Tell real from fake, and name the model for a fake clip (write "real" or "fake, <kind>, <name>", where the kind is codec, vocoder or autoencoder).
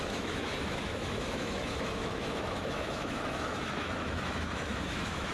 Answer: fake, autoencoder, DAC-VAE